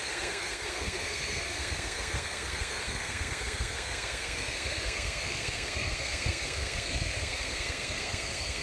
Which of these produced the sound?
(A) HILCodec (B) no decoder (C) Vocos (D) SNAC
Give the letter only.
D